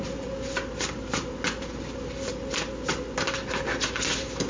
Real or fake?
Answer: real